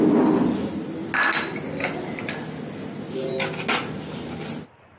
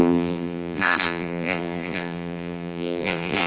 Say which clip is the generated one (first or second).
second